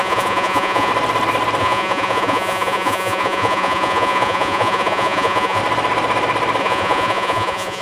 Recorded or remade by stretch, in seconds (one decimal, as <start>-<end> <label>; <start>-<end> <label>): 0.0-0.9 remade; 0.9-1.6 recorded; 1.6-5.6 remade; 5.6-6.6 recorded; 6.6-7.8 remade